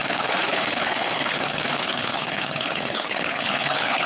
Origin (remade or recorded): remade